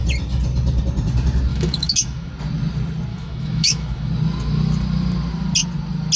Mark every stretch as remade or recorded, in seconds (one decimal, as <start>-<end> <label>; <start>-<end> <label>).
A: 0.0-1.5 recorded; 1.5-2.3 remade; 2.3-3.1 recorded; 3.1-4.1 remade; 4.1-6.2 recorded